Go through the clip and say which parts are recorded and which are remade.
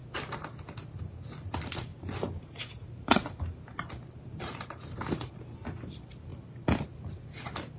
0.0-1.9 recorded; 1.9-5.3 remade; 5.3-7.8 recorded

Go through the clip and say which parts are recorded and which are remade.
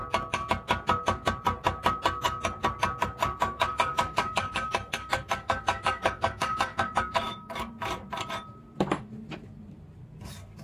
0.0-3.2 recorded; 3.2-7.7 remade; 7.7-10.6 recorded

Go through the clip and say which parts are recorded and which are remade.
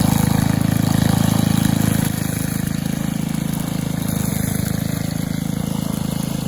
0.0-6.5 recorded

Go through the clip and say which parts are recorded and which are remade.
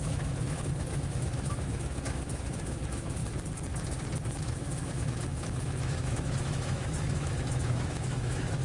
0.0-3.2 remade; 3.2-4.4 recorded; 4.4-8.6 remade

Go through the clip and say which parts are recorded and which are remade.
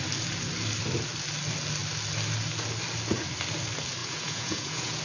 0.0-4.0 recorded; 4.0-5.0 remade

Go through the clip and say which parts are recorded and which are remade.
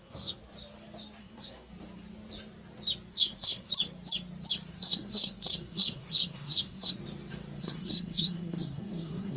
0.0-0.4 remade; 0.4-1.2 recorded; 1.2-1.7 remade; 1.7-3.1 recorded; 3.1-3.7 remade; 3.7-4.7 recorded; 4.7-7.0 remade; 7.0-7.6 recorded; 7.6-9.4 remade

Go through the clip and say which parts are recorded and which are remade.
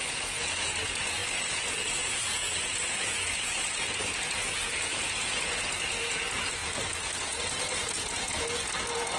0.0-9.2 remade